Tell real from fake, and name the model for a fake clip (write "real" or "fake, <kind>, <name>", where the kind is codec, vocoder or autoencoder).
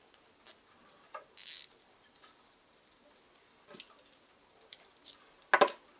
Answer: real